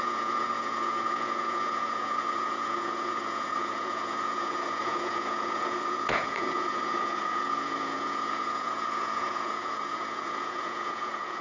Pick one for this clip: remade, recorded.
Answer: remade